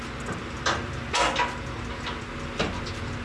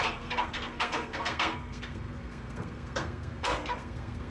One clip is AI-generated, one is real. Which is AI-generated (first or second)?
second